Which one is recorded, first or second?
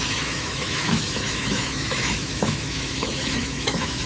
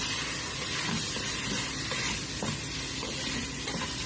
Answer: second